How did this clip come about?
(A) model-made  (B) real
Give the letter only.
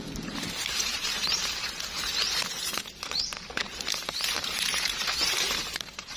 A